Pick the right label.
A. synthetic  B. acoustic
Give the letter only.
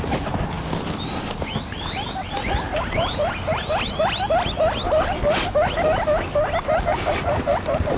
B